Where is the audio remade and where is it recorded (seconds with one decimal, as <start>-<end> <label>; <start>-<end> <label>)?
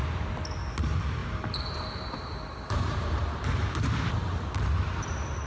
0.0-1.2 recorded; 1.2-4.5 remade; 4.5-5.5 recorded